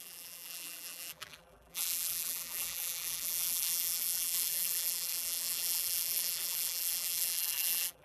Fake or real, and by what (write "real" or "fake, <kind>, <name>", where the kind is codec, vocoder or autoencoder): fake, vocoder, BigVGAN v2